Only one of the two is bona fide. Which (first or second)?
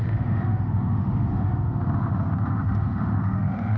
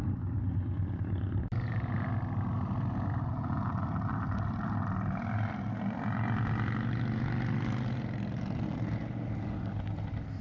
second